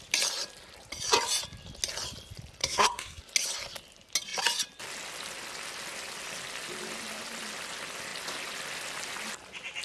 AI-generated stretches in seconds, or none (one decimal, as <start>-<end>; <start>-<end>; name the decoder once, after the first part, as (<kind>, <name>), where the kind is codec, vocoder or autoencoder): 2.6-3.2 (codec, SNAC)